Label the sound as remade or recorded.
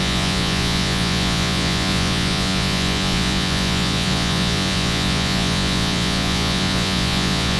remade